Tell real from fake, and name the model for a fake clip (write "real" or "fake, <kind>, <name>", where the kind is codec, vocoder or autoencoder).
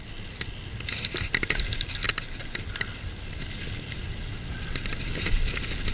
real